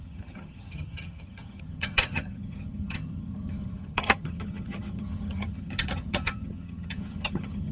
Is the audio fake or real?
fake